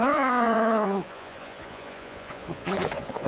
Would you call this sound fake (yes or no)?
yes